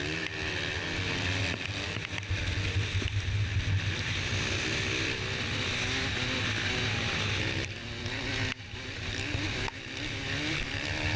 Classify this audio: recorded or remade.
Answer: recorded